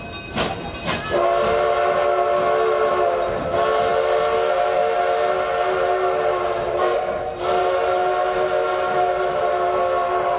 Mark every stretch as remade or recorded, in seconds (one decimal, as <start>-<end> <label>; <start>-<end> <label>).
0.0-10.4 recorded